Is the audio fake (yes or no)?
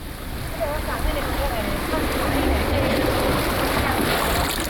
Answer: no